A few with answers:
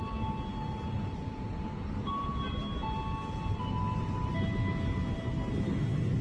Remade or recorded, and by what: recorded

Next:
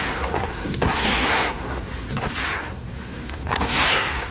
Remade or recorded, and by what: remade, codec, SNAC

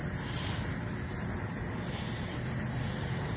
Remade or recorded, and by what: remade, vocoder, BigVGAN v2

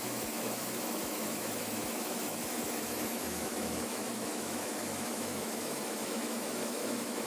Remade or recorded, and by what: remade, autoencoder, DAC-VAE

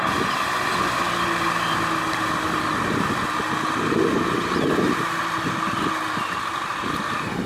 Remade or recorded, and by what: recorded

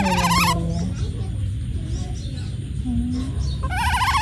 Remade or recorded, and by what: recorded